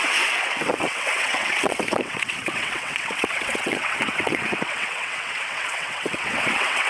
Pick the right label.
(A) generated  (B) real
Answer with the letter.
A